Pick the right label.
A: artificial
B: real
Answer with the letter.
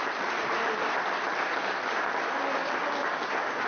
B